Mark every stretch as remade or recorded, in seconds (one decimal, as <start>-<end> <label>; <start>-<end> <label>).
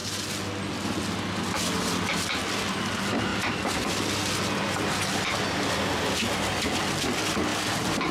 0.0-8.1 recorded